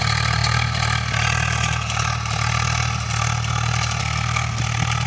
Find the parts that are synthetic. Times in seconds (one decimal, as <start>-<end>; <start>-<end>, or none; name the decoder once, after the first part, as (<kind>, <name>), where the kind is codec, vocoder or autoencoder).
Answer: 4.0-4.6 (codec, SNAC)